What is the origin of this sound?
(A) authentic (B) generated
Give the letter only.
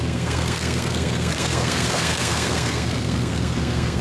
B